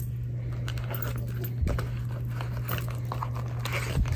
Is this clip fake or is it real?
real